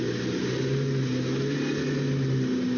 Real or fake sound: real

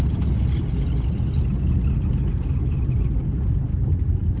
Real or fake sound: real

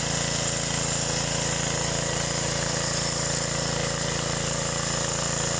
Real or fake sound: real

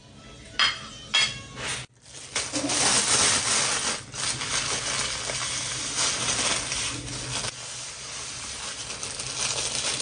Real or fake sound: real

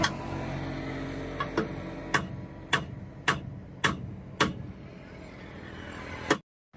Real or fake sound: real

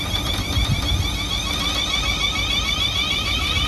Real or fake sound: real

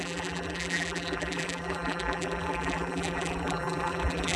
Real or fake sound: fake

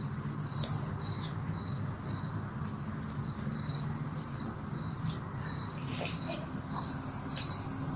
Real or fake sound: real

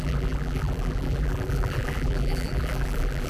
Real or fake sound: fake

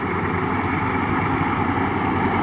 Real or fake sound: real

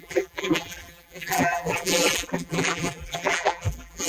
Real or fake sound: fake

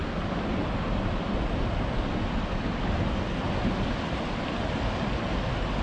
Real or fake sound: real